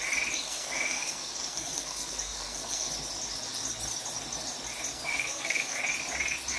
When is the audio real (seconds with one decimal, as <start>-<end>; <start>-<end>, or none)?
0.0-0.4; 2.9-4.9; 5.8-6.6